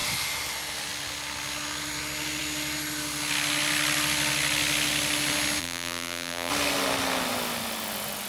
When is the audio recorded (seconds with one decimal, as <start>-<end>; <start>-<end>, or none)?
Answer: 0.0-5.6; 6.5-8.3